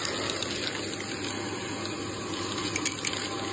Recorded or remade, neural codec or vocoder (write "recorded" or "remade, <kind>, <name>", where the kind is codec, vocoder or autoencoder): recorded